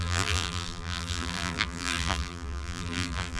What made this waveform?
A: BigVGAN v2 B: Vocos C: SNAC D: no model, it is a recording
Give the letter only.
A